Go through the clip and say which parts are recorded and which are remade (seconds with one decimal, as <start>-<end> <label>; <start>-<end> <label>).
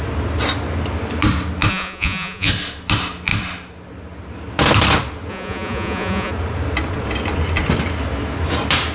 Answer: 0.0-1.7 recorded; 1.7-2.5 remade; 2.5-5.3 recorded; 5.3-6.3 remade; 6.3-8.9 recorded